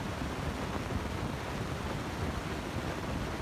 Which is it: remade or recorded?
recorded